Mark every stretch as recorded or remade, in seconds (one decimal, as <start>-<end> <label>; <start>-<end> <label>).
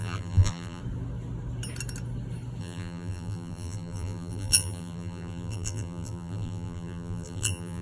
0.0-0.8 remade; 0.8-2.6 recorded; 2.6-7.8 remade